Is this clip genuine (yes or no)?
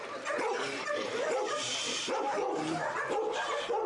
no